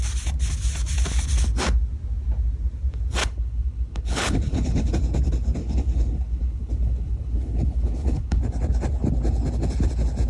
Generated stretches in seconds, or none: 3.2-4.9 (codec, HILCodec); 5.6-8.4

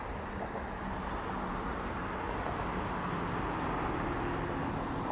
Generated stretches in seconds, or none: none

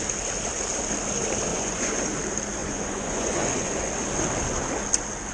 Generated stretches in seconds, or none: 1.5-2.0 (vocoder, Vocos); 2.6-3.9

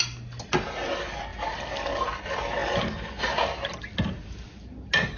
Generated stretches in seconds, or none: none

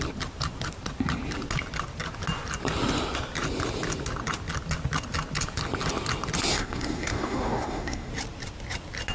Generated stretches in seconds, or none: 6.5-8.1 (codec, SNAC)

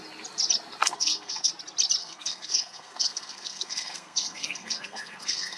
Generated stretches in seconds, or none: 0.8-1.5 (codec, SNAC); 2.0-5.6

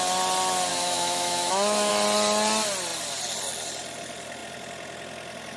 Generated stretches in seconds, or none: 0.7-1.9 (autoencoder, DAC-VAE)